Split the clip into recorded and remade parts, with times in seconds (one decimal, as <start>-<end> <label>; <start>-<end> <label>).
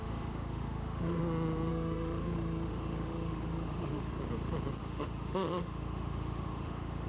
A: 0.0-1.2 remade; 1.2-1.7 recorded; 1.7-4.1 remade; 4.1-4.8 recorded; 4.8-7.1 remade